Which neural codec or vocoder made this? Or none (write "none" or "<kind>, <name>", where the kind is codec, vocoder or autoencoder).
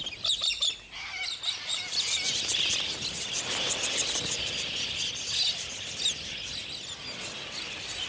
none